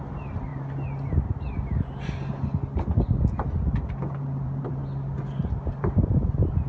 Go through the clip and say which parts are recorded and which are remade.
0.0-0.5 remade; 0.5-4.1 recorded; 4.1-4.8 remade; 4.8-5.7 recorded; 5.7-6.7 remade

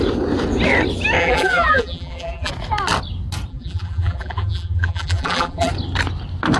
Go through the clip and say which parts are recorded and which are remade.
0.0-1.2 recorded; 1.2-2.5 remade; 2.5-3.5 recorded; 3.5-5.7 remade; 5.7-6.6 recorded

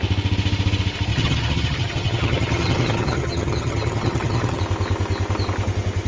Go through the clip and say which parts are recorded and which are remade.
0.0-1.1 recorded; 1.1-4.6 remade; 4.6-6.1 recorded

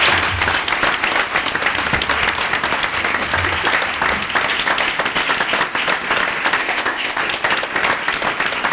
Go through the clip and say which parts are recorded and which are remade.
0.0-6.6 recorded; 6.6-7.2 remade; 7.2-8.7 recorded

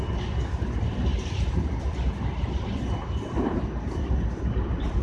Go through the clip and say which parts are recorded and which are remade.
0.0-5.0 recorded

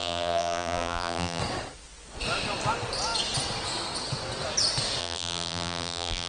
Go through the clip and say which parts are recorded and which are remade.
0.0-1.4 remade; 1.4-5.0 recorded; 5.0-6.3 remade

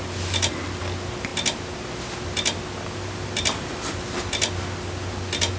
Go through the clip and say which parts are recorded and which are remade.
0.0-5.6 recorded